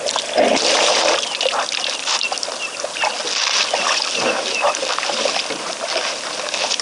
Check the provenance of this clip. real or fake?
real